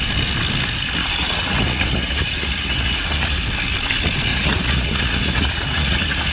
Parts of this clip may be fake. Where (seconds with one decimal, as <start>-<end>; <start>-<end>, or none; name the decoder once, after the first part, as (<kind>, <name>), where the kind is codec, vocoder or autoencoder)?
1.0-3.5 (vocoder, Vocos); 4.3-6.3